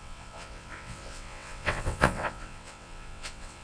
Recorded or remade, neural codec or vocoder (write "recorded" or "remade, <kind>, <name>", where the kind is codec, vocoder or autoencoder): remade, vocoder, WaveNeXt